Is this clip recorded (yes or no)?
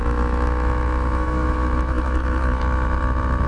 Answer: no